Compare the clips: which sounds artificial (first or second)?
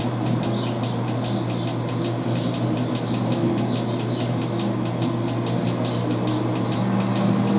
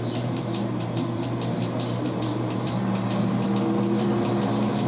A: second